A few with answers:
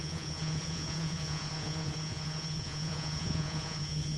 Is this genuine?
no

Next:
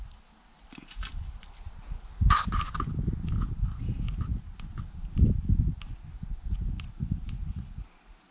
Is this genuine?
yes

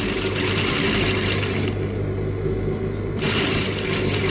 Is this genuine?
yes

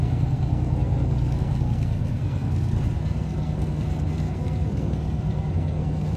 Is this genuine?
no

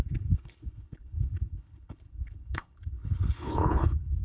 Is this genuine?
no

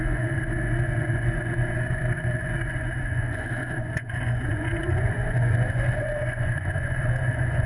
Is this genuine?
no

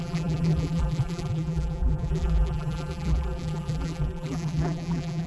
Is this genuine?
no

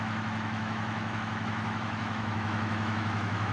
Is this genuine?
no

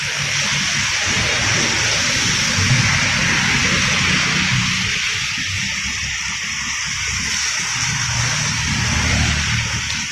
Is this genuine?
yes